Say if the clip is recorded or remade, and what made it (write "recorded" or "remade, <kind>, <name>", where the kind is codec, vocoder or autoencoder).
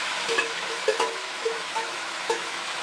remade, autoencoder, DAC-VAE